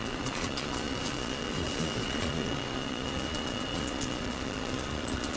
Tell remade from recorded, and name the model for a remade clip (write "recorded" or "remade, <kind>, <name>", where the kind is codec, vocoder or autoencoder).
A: remade, vocoder, Vocos